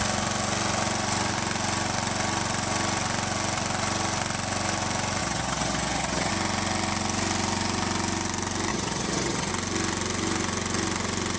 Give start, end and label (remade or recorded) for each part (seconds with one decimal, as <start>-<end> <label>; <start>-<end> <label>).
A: 0.0-5.2 recorded; 5.2-6.3 remade; 6.3-8.7 recorded; 8.7-9.5 remade; 9.5-11.4 recorded

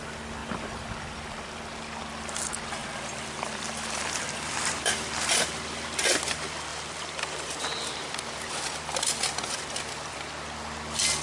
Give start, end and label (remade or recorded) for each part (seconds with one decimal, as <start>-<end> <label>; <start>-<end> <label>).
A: 0.0-0.4 recorded; 0.4-1.8 remade; 1.8-2.8 recorded; 2.8-5.4 remade; 5.4-6.7 recorded; 6.7-10.2 remade; 10.2-11.2 recorded

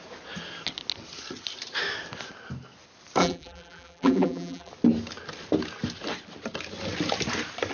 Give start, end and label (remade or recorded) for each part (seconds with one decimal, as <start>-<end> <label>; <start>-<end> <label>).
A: 0.0-3.2 recorded; 3.2-4.7 remade; 4.7-7.7 recorded

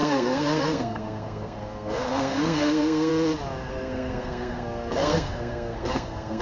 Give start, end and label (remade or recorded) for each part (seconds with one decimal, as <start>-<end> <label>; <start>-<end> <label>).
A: 0.0-3.1 remade; 3.1-3.7 recorded; 3.7-6.4 remade

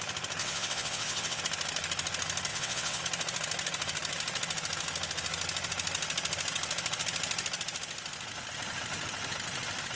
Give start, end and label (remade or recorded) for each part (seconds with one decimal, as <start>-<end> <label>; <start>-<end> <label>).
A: 0.0-0.4 recorded; 0.4-1.4 remade; 1.4-2.5 recorded; 2.5-3.0 remade; 3.0-10.0 recorded

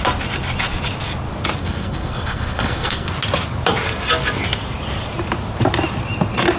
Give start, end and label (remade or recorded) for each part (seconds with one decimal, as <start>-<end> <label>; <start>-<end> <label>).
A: 0.0-1.6 recorded; 1.6-3.1 remade; 3.1-6.6 recorded